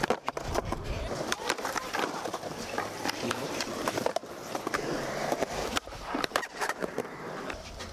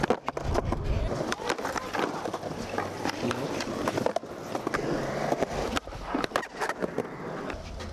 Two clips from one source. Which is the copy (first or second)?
first